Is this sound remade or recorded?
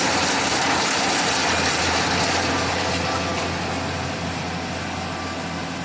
recorded